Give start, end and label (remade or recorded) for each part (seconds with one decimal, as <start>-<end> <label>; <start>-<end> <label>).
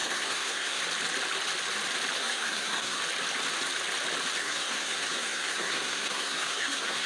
0.0-0.8 remade; 0.8-2.2 recorded; 2.2-3.0 remade; 3.0-4.4 recorded; 4.4-7.1 remade